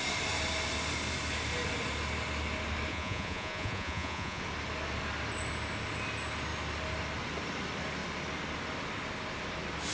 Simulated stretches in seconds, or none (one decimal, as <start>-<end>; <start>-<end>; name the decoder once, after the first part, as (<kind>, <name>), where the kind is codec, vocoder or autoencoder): 2.9-4.4 (vocoder, Vocos)